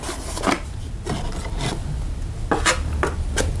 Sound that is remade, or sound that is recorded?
recorded